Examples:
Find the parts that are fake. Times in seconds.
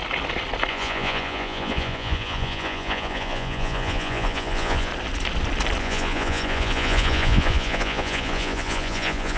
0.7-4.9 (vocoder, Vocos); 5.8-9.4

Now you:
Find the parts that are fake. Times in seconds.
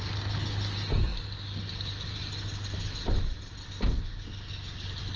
none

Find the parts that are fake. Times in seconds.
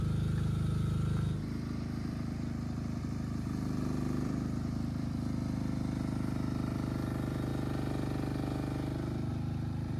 0.0-7.5 (vocoder, BigVGAN v2); 9.3-10.0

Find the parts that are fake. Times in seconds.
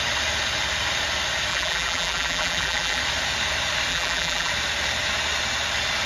1.5-3.0 (vocoder, BigVGAN v2); 3.9-4.5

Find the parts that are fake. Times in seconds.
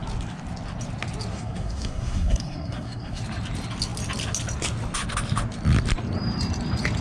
1.3-3.2 (codec, SNAC)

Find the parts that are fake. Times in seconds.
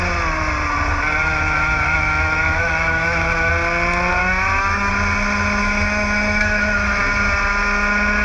1.2-3.5 (autoencoder, DAC-VAE); 4.2-4.9; 5.6-7.0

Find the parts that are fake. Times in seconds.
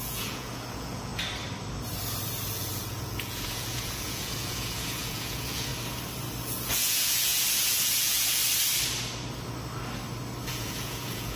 0.0-1.1 (vocoder, Vocos); 2.5-5.7; 6.4-8.4; 10.5-11.4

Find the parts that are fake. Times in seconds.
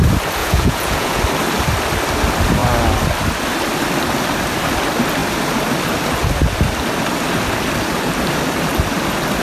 0.4-1.2 (vocoder, Vocos)